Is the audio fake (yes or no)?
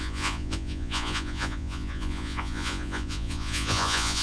yes